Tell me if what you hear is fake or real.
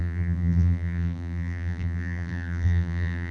fake